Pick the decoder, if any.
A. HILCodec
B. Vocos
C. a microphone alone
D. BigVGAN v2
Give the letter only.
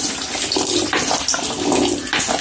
C